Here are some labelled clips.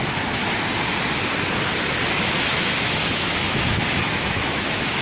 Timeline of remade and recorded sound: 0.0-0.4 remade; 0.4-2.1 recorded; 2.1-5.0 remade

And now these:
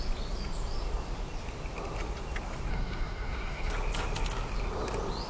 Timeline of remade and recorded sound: 0.0-2.7 recorded; 2.7-3.7 remade; 3.7-5.3 recorded

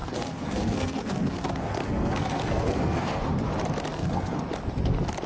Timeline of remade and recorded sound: 0.0-3.2 remade; 3.2-3.9 recorded; 3.9-4.4 remade; 4.4-5.3 recorded